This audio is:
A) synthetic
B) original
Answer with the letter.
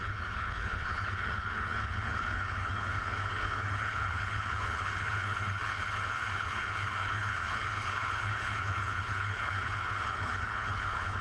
A